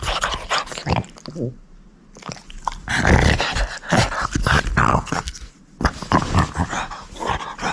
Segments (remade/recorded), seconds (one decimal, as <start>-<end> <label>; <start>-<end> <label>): 0.0-4.9 recorded; 4.9-5.6 remade; 5.6-7.7 recorded

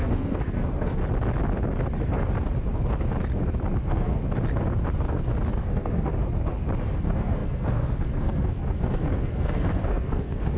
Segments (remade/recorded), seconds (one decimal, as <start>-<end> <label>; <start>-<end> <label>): 0.0-1.0 remade; 1.0-3.8 recorded; 3.8-4.2 remade; 4.2-5.6 recorded; 5.6-6.1 remade; 6.1-6.8 recorded; 6.8-10.6 remade